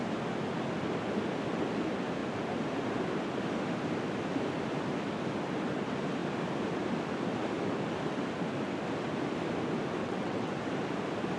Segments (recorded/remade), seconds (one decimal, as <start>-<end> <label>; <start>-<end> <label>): 0.0-10.0 recorded; 10.0-10.5 remade; 10.5-11.4 recorded